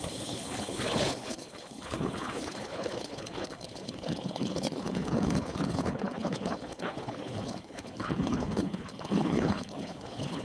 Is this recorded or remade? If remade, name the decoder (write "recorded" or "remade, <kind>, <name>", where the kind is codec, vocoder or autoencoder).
remade, codec, HILCodec